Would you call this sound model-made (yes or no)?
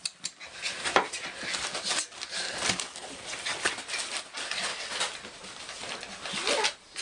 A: no